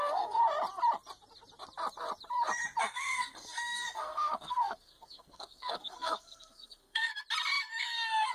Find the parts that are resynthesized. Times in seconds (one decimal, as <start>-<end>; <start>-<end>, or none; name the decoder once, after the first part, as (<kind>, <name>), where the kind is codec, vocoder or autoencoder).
0.0-0.4 (codec, SNAC); 2.8-7.1; 7.8-8.3